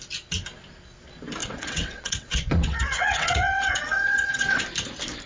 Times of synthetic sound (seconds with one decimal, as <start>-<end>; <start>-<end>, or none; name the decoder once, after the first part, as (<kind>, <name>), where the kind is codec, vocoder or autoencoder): 1.4-4.6 (vocoder, WaveNeXt)